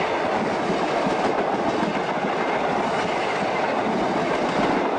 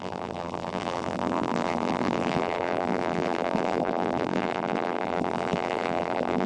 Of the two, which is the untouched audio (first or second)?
first